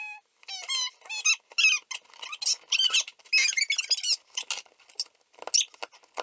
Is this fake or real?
real